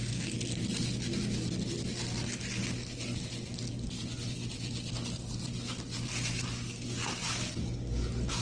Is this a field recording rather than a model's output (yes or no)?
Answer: yes